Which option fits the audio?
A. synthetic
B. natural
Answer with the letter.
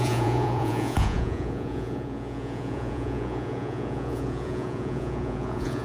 A